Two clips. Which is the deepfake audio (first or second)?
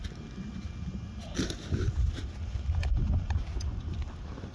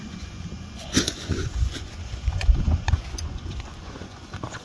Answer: second